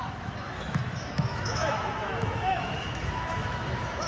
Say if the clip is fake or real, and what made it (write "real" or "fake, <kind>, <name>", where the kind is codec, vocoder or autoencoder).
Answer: fake, autoencoder, DAC-VAE